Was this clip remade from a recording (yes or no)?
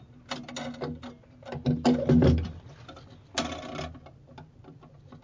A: no